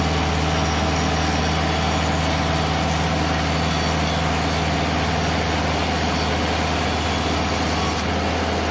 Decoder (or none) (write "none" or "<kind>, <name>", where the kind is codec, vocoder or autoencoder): none